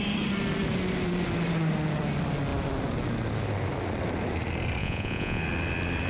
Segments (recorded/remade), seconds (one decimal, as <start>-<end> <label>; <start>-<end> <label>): 0.0-4.8 recorded; 4.8-5.4 remade; 5.4-6.1 recorded